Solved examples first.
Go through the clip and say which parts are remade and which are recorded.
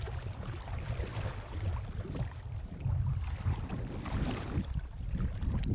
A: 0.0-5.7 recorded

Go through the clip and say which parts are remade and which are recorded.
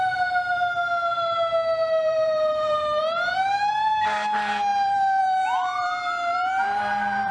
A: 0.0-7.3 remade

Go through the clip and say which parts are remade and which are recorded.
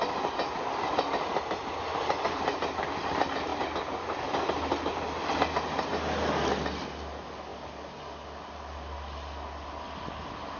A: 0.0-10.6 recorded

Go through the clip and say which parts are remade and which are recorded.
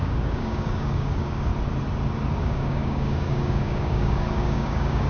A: 0.0-1.5 remade; 1.5-2.4 recorded; 2.4-5.1 remade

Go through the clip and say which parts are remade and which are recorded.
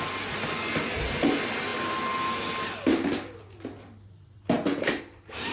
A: 0.0-5.5 recorded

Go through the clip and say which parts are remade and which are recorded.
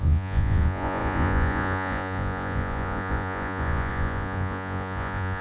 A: 0.0-5.4 remade